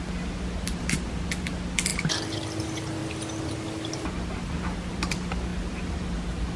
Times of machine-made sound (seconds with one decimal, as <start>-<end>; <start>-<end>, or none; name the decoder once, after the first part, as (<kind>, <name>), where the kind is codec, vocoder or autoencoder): 0.0-3.0 (vocoder, BigVGAN v2); 4.1-5.5